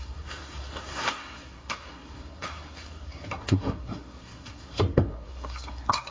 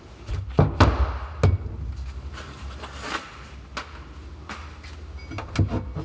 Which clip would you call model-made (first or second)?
first